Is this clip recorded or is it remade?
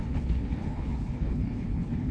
remade